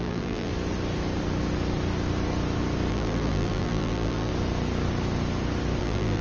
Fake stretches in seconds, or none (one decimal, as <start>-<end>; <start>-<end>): 0.0-0.5; 2.9-4.3; 5.8-6.2